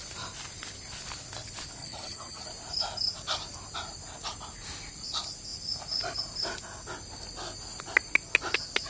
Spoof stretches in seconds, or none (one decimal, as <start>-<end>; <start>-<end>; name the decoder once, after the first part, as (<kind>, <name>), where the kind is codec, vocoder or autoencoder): 1.8-2.5 (vocoder, HiFi-GAN)